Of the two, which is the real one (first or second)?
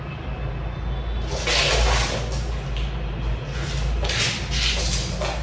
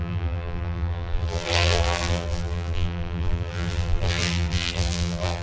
first